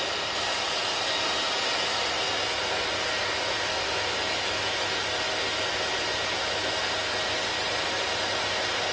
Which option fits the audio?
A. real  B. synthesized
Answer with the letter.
A